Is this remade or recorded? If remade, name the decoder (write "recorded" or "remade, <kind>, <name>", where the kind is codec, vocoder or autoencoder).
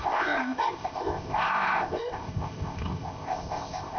remade, codec, ZipCodec